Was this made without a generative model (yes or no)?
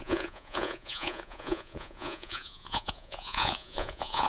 no